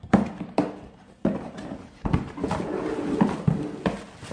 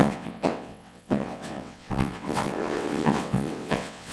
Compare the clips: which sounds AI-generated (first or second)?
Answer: second